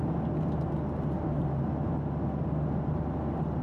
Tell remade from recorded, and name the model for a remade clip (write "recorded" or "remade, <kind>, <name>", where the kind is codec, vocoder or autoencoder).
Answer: recorded